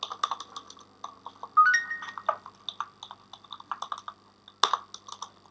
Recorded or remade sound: recorded